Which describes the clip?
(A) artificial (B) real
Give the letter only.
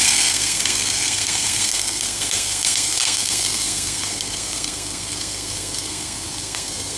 A